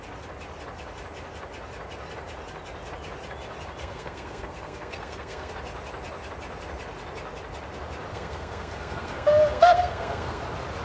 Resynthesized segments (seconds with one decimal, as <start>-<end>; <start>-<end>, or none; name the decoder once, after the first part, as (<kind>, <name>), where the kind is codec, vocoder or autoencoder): 3.8-5.5 (codec, SNAC); 8.1-10.4